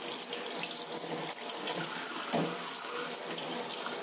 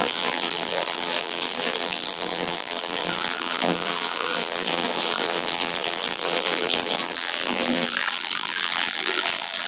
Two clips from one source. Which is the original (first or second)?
first